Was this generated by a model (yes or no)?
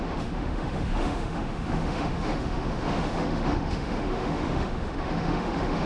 yes